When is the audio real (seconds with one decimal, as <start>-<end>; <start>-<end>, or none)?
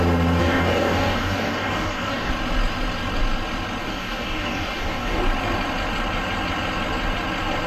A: 0.0-0.4; 2.3-3.8; 5.2-7.7